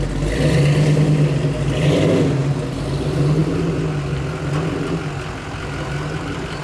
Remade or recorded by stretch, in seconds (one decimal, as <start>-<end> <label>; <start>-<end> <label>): 0.0-6.6 recorded